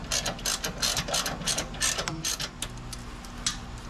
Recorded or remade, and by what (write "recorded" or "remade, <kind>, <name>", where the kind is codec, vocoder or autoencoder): recorded